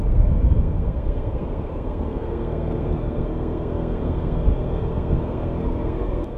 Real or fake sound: fake